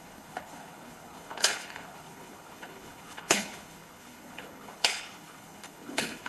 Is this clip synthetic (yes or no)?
yes